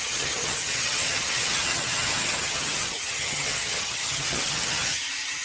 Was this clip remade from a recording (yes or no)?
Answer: yes